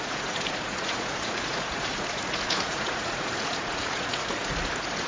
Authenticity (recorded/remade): remade